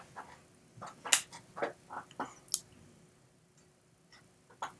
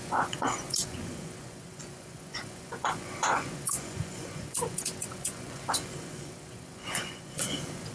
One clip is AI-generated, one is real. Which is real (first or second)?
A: first